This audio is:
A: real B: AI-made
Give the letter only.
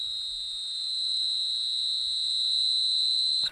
B